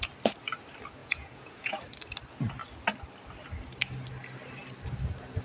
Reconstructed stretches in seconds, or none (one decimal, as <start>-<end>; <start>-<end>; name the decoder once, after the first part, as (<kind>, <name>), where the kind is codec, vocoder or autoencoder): 1.0-1.8 (vocoder, Vocos)